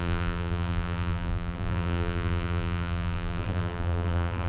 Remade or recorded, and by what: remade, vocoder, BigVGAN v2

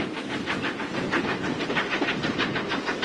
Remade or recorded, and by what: recorded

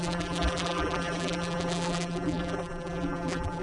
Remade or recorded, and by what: remade, vocoder, BigVGAN v2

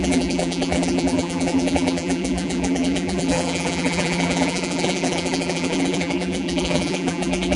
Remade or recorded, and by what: remade, vocoder, BigVGAN v2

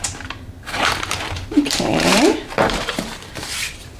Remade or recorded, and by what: remade, vocoder, BigVGAN v2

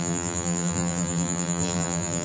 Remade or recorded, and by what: remade, vocoder, BigVGAN v2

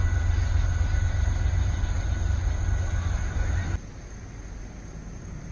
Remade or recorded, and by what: recorded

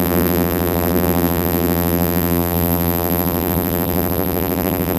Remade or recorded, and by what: remade, vocoder, BigVGAN v2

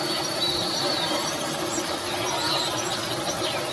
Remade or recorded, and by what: remade, vocoder, BigVGAN v2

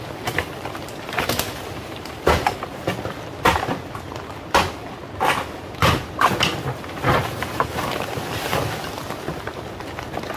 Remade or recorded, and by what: recorded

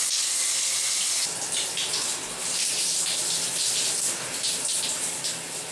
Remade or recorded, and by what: recorded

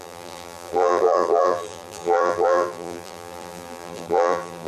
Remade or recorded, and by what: remade, vocoder, BigVGAN v2